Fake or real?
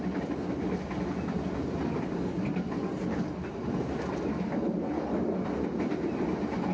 real